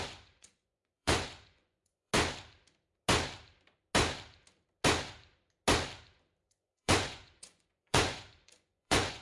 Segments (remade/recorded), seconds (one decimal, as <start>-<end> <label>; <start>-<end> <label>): 0.0-2.1 remade; 2.1-6.4 recorded; 6.4-9.2 remade